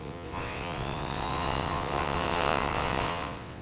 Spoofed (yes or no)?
yes